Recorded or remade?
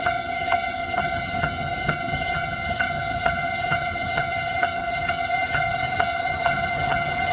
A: remade